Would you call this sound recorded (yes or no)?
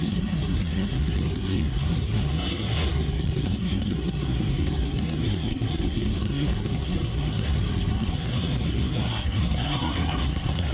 no